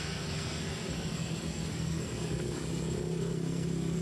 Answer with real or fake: fake